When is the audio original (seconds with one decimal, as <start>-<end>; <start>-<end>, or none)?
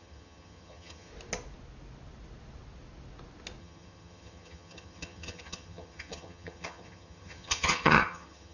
1.1-3.6